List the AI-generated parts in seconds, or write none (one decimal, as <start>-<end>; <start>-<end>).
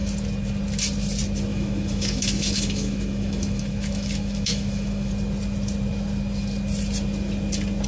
1.5-5.1